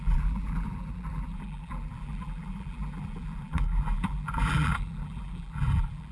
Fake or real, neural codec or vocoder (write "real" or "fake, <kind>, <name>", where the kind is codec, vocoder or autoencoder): fake, vocoder, BigVGAN v2